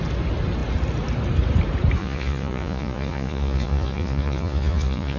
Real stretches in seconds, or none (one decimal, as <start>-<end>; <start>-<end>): 0.0-2.0